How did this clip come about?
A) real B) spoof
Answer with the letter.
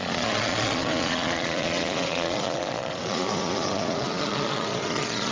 B